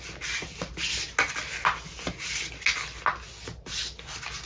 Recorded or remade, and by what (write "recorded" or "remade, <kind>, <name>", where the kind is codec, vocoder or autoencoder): recorded